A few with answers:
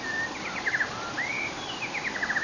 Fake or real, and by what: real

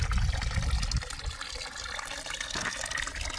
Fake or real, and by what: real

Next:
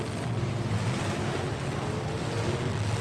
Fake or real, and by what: real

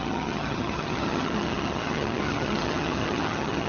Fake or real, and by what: fake, vocoder, HiFi-GAN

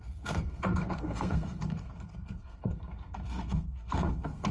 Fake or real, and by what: fake, codec, SNAC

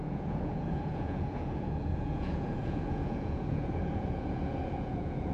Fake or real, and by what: fake, vocoder, Vocos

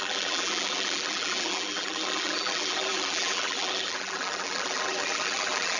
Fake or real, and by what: fake, vocoder, BigVGAN v2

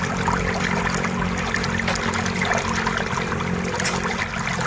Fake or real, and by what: real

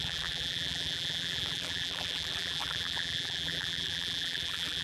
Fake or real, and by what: fake, vocoder, BigVGAN v2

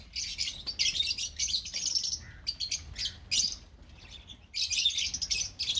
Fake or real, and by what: real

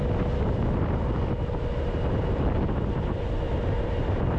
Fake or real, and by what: real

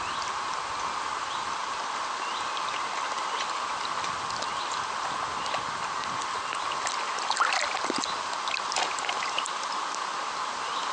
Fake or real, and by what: real